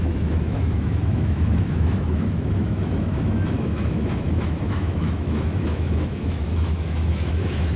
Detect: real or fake fake